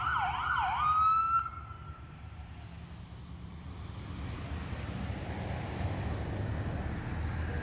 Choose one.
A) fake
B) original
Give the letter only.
B